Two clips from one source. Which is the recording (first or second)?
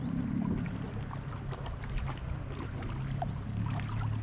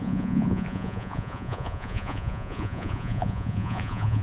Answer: first